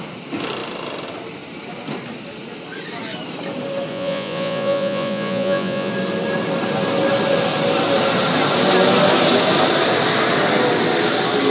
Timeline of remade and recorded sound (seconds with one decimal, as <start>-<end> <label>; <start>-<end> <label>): 0.0-3.9 recorded; 3.9-5.9 remade; 5.9-11.5 recorded

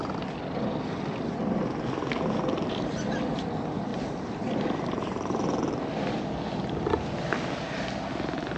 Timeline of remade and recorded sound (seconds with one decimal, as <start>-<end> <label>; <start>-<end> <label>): 0.0-3.9 recorded; 3.9-5.8 remade; 5.8-8.6 recorded

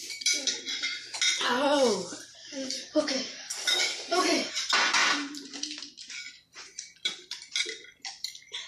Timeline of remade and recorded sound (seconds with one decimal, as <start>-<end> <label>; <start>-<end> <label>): 0.0-2.4 recorded; 2.4-4.5 remade; 4.5-8.7 recorded

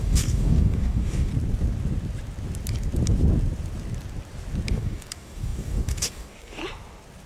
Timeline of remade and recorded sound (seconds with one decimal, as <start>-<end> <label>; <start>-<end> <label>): 0.0-1.3 remade; 1.3-4.7 recorded; 4.7-6.6 remade; 6.6-7.3 recorded

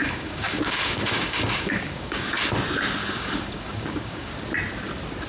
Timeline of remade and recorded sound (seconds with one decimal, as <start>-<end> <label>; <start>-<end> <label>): 0.0-2.4 remade; 2.4-3.0 recorded; 3.0-4.3 remade; 4.3-5.3 recorded

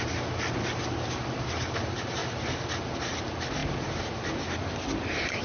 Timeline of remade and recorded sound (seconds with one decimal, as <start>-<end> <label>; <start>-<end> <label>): 0.0-5.4 recorded